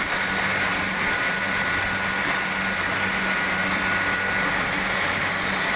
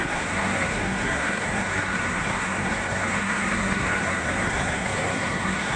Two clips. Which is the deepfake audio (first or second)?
second